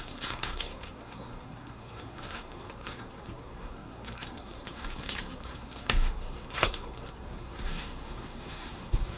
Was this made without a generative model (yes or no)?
no